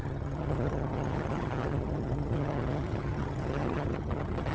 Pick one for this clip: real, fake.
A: fake